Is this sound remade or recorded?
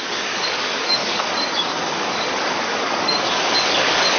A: remade